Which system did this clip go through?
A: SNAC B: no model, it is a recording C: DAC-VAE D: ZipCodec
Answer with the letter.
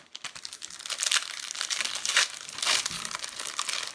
B